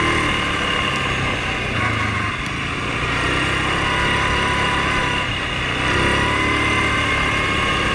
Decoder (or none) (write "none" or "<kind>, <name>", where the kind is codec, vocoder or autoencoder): none